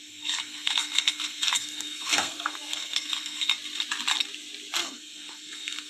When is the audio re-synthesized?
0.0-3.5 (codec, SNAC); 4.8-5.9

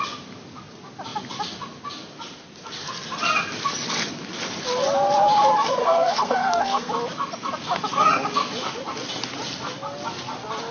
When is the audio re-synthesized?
5.8-6.9 (codec, SNAC)

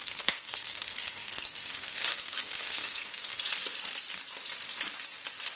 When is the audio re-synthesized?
0.0-3.4 (codec, SNAC)

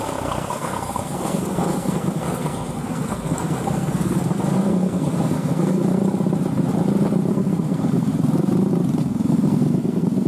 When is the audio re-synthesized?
0.0-6.0 (codec, SNAC); 7.3-8.1; 9.0-10.3